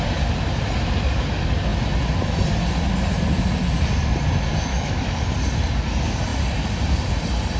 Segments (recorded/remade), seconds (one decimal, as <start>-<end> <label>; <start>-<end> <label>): 0.0-4.7 recorded; 4.7-5.2 remade; 5.2-7.6 recorded